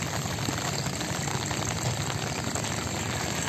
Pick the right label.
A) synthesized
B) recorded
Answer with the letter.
B